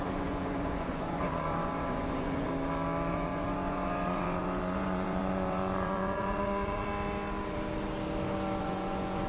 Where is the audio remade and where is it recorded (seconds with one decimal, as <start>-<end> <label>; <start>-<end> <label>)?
0.0-2.5 remade; 2.5-3.1 recorded; 3.1-6.9 remade; 6.9-8.6 recorded; 8.6-9.3 remade